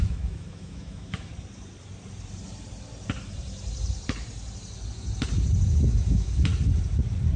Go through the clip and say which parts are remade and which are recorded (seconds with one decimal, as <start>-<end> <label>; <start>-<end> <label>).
0.0-1.3 remade; 1.3-5.7 recorded; 5.7-6.5 remade; 6.5-7.4 recorded